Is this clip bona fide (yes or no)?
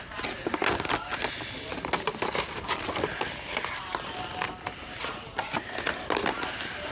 yes